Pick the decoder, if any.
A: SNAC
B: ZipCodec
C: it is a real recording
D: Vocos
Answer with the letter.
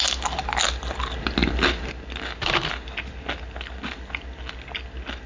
C